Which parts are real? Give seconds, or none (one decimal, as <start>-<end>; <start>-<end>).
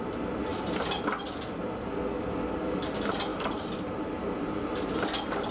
0.0-0.5; 1.0-3.3; 4.9-5.5